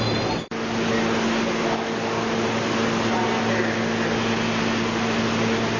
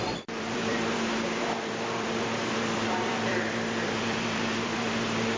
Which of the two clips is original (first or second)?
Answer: first